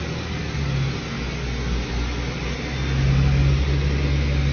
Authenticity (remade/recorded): recorded